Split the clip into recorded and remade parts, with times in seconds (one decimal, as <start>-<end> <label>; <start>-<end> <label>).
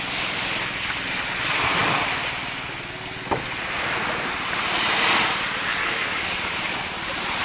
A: 0.0-5.7 recorded; 5.7-6.5 remade; 6.5-7.4 recorded